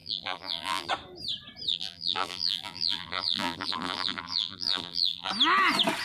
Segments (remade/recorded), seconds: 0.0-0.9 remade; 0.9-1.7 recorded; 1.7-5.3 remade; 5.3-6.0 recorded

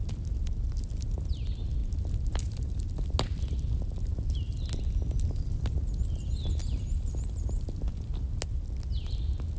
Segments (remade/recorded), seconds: 0.0-9.6 recorded

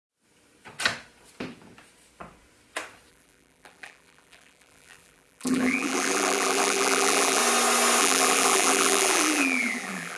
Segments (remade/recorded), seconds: 0.0-3.1 recorded; 3.1-7.4 remade; 7.4-8.0 recorded; 8.0-10.2 remade

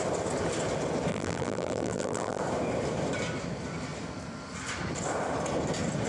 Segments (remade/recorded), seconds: 0.0-1.1 recorded; 1.1-2.4 remade; 2.4-6.1 recorded

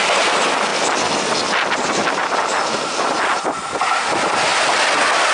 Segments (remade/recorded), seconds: 0.0-4.5 recorded; 4.5-5.3 remade